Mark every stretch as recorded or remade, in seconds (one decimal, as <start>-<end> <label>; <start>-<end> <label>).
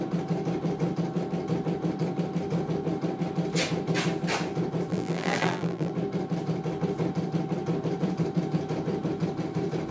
0.0-4.9 recorded; 4.9-5.9 remade; 5.9-9.9 recorded